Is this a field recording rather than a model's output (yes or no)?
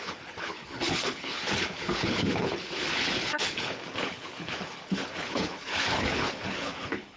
no